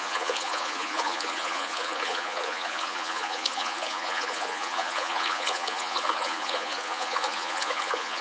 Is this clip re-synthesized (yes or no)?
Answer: yes